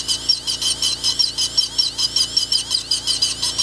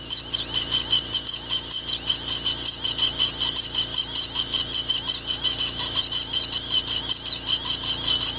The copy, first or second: second